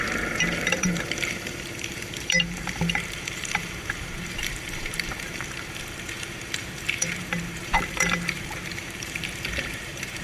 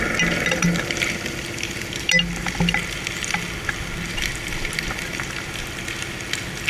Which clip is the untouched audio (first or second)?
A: second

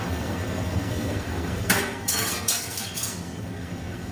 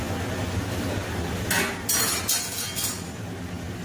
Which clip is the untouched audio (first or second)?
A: second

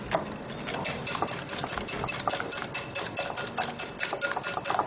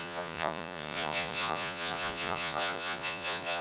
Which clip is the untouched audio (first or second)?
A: first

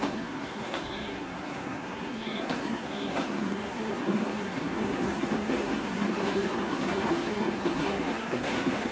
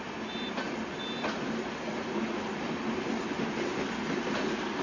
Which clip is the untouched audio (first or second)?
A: second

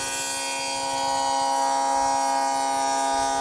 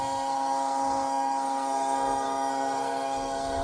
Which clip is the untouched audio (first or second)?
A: first